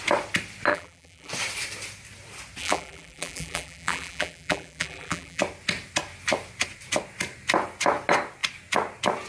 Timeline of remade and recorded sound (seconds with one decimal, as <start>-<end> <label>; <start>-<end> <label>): 0.0-0.7 recorded; 0.7-1.3 remade; 1.3-2.6 recorded; 2.6-5.4 remade; 5.4-9.3 recorded